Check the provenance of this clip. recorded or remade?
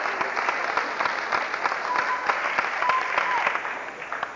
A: recorded